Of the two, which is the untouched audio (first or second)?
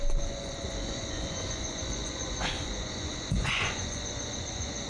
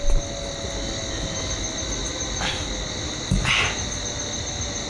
second